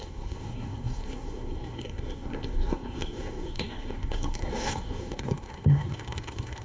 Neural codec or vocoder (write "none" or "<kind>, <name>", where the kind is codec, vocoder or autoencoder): codec, SNAC